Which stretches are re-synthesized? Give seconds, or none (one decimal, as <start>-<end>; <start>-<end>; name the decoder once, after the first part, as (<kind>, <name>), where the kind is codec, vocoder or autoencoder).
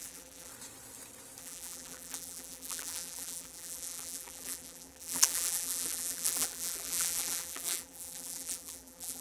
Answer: 0.0-0.5 (vocoder, BigVGAN v2); 1.4-9.2